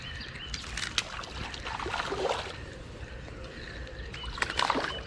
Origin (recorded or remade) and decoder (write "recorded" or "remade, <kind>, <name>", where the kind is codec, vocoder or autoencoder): recorded